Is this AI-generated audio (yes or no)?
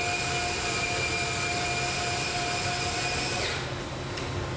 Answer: no